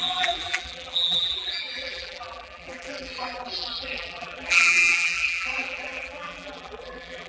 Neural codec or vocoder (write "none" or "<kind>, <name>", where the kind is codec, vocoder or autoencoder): vocoder, BigVGAN v2